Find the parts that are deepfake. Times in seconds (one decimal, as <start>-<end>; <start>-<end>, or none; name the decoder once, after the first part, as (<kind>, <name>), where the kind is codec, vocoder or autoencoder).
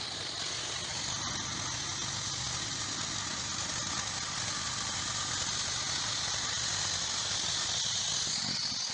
none